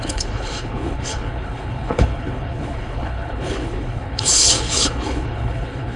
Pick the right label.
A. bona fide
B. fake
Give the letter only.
B